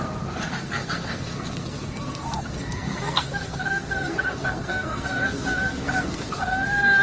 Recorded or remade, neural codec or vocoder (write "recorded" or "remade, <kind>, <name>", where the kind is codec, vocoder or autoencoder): remade, codec, SNAC